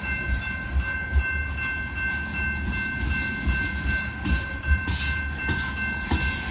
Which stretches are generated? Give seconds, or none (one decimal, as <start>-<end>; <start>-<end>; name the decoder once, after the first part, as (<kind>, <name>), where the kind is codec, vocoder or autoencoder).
none